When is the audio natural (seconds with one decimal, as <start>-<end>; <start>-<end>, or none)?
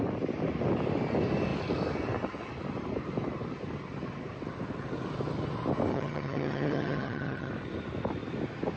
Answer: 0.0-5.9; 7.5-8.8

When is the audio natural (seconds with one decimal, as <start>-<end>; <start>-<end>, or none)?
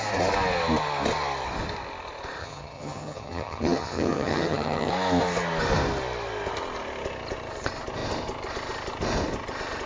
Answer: 0.0-2.4; 4.9-9.9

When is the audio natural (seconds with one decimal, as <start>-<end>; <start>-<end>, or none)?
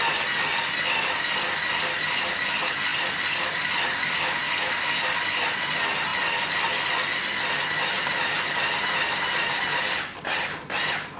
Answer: 0.0-11.2